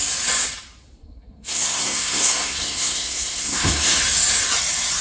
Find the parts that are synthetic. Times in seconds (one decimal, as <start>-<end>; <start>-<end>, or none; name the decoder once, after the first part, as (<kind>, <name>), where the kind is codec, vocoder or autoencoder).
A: 1.0-4.0 (codec, SNAC)